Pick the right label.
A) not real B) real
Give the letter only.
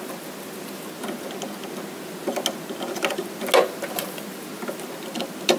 B